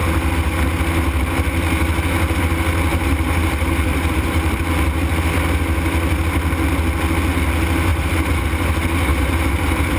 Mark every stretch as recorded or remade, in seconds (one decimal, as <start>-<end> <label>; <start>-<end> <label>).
0.0-2.9 recorded; 2.9-4.6 remade; 4.6-7.9 recorded; 7.9-8.4 remade; 8.4-9.1 recorded; 9.1-10.0 remade